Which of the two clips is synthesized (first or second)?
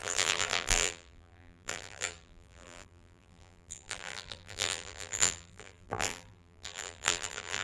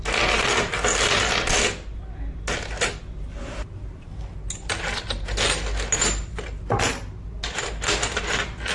first